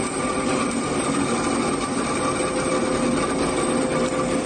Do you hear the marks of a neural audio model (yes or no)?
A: no